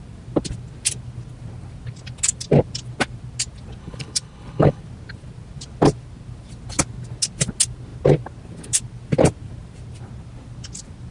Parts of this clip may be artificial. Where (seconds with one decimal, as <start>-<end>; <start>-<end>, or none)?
3.8-4.8